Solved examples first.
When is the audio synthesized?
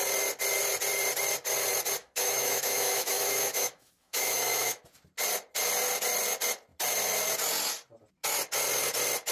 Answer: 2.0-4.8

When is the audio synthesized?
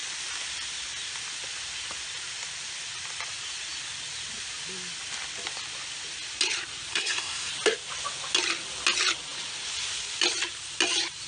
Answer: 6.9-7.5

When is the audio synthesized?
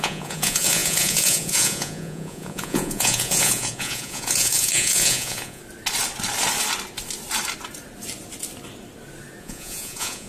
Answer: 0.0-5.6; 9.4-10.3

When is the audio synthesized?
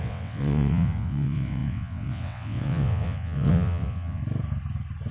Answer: 0.0-4.2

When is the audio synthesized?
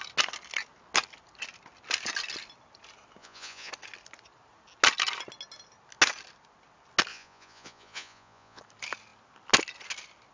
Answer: 3.2-3.7; 7.1-8.6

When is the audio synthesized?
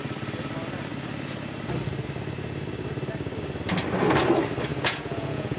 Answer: 4.7-5.6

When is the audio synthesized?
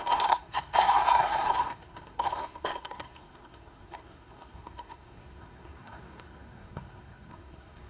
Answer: 0.0-7.9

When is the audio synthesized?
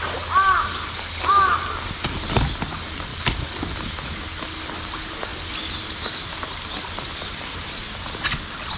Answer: none